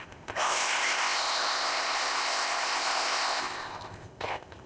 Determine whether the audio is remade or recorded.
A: remade